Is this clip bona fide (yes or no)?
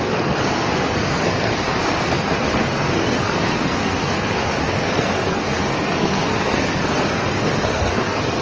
no